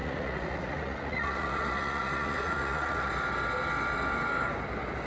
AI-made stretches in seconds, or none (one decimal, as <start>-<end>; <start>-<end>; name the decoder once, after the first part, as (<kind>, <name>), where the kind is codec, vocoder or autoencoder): 0.0-3.1 (vocoder, Vocos)